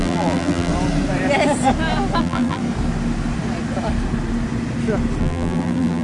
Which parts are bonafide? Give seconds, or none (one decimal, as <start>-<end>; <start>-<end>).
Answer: 0.7-2.2; 2.6-5.2